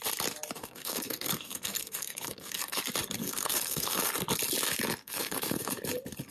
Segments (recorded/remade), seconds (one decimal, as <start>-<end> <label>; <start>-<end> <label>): 0.0-0.6 recorded; 0.6-2.8 remade; 2.8-3.2 recorded; 3.2-4.1 remade; 4.1-5.0 recorded; 5.0-5.8 remade; 5.8-6.3 recorded